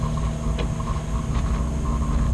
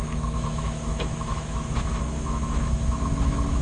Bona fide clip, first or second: first